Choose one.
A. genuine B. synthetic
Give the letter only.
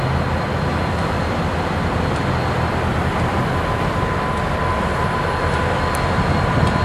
A